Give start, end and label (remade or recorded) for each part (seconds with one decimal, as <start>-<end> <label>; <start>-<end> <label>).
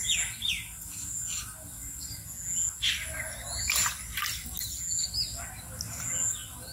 0.0-6.7 recorded